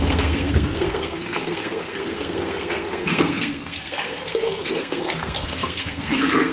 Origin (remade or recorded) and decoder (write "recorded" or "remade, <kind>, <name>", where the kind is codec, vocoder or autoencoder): remade, codec, SNAC